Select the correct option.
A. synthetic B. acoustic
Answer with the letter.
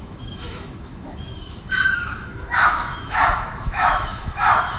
A